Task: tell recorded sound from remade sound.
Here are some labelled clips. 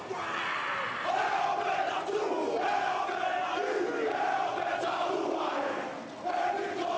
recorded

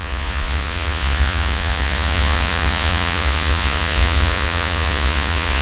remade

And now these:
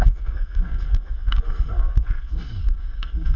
remade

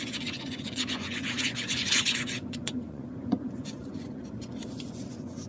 remade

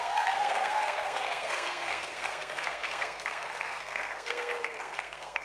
remade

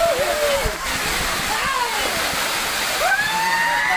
recorded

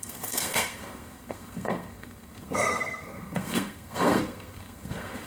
remade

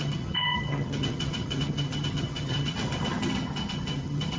remade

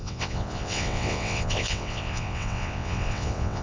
remade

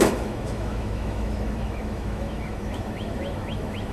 remade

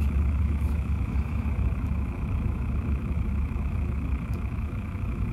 remade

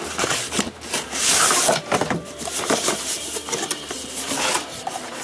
remade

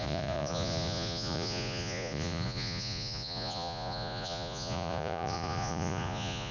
remade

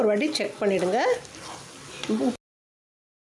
recorded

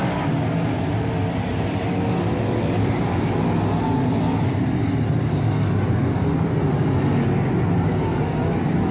recorded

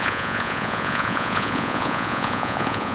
remade